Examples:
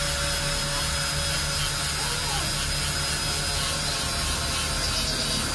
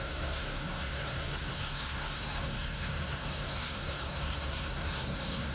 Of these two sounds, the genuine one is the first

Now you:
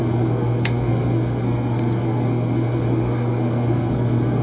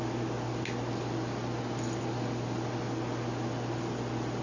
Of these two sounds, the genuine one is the second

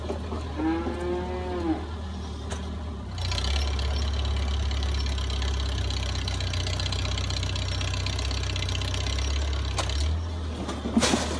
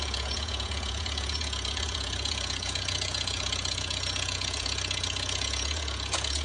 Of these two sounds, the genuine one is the first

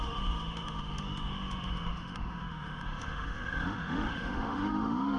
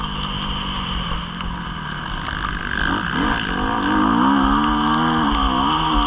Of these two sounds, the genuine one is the second